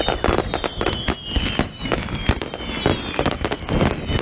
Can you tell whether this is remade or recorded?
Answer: recorded